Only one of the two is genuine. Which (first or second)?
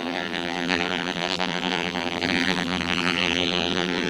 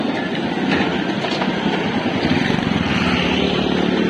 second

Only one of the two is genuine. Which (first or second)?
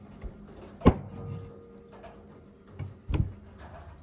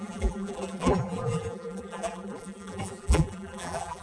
first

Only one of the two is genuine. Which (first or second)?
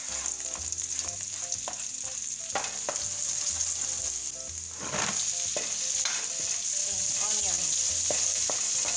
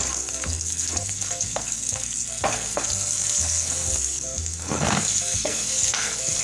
first